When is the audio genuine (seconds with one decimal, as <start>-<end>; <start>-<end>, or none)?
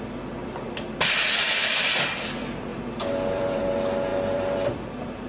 0.0-0.4; 2.2-2.7; 3.6-4.1